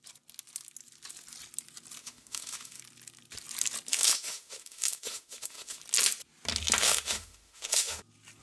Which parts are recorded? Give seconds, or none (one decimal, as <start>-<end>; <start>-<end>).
0.0-2.0; 2.8-3.9; 5.8-6.8; 8.0-8.4